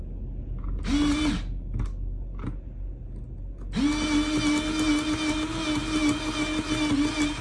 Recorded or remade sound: recorded